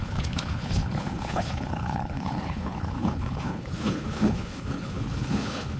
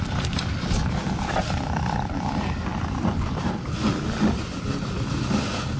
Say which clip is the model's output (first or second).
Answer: first